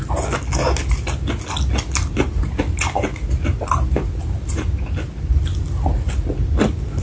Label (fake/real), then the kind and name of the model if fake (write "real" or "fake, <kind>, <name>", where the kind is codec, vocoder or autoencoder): real